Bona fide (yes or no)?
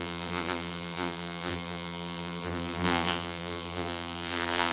no